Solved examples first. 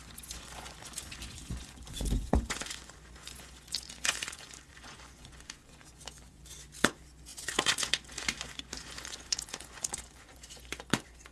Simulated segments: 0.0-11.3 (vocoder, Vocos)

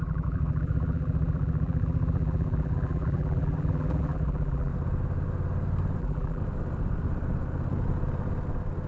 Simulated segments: 0.0-4.7 (vocoder, BigVGAN v2); 6.0-6.4

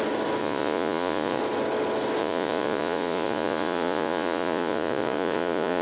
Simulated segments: 0.4-1.4 (vocoder, Vocos); 2.2-5.8

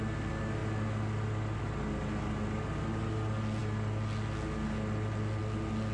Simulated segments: none

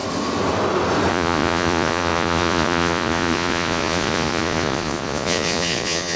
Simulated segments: 1.1-6.2 (vocoder, Vocos)

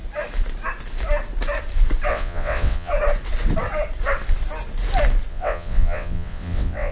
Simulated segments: 2.1-2.9 (vocoder, WaveNeXt); 5.3-6.9

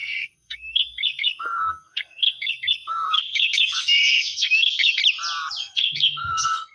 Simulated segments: 0.0-5.0 (codec, SNAC); 5.6-6.7